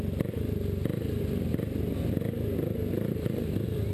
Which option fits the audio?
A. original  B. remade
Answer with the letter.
A